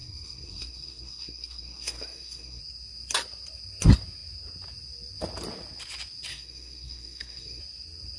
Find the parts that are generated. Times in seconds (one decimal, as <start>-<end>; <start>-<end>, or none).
0.0-2.6; 6.3-7.6